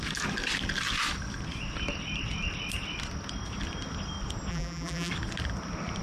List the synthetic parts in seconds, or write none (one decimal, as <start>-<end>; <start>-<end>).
4.5-5.1